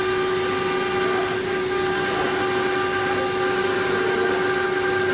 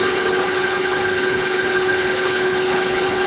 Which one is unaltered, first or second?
first